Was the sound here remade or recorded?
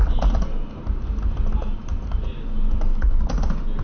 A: recorded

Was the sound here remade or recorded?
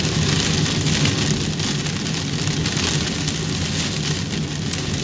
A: recorded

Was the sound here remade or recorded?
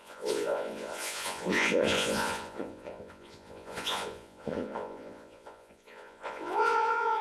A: remade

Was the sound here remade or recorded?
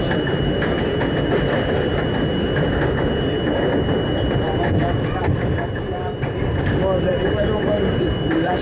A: remade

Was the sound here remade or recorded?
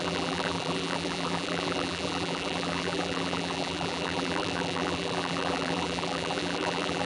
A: remade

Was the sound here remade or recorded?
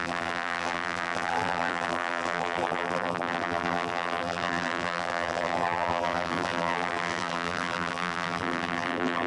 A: remade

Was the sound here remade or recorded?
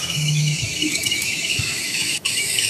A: remade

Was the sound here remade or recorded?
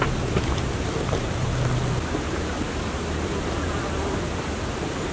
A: recorded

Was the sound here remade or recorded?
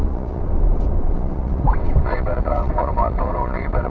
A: remade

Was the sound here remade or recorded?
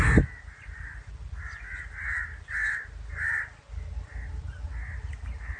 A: recorded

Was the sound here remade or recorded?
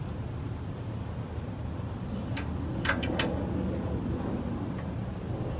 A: recorded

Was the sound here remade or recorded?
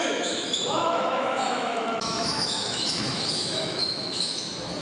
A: remade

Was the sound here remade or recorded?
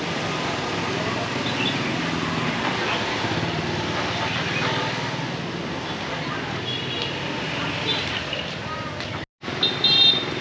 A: recorded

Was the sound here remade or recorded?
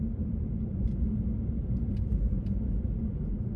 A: recorded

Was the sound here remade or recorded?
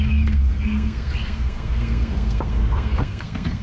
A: remade